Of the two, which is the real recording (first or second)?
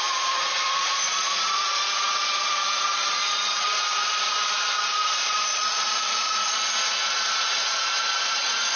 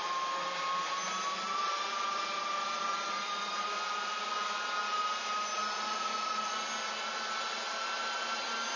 second